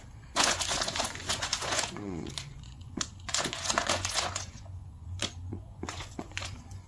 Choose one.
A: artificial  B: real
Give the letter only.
A